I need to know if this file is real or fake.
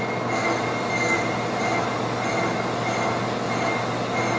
real